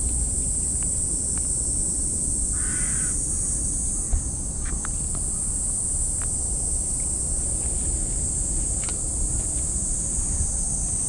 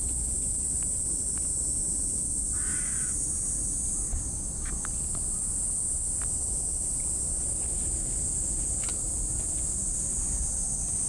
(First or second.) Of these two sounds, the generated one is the first